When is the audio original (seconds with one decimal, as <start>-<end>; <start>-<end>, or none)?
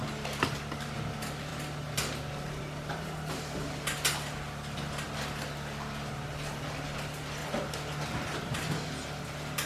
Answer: 0.0-7.4; 8.4-9.7